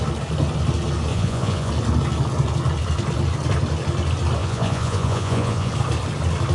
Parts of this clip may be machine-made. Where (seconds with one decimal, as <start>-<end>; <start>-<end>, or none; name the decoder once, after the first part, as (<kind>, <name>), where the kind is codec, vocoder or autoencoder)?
1.1-1.7 (vocoder, Vocos); 4.4-5.7

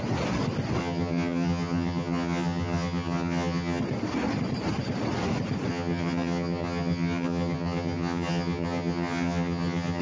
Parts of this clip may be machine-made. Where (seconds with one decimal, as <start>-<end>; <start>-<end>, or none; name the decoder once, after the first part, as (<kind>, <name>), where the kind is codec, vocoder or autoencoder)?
0.8-3.8 (vocoder, HiFi-GAN); 5.7-10.0